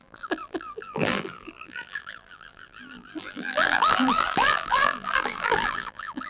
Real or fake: fake